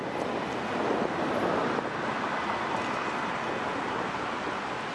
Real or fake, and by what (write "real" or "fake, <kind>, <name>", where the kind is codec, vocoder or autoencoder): real